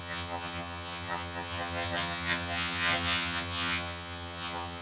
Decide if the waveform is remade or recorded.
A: remade